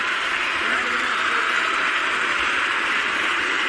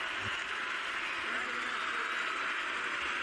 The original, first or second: second